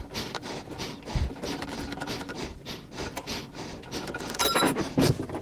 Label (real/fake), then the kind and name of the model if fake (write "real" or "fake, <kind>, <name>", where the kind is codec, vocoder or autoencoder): fake, vocoder, BigVGAN v2